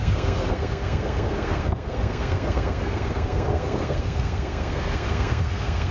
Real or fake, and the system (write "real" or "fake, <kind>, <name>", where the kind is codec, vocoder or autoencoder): fake, codec, SNAC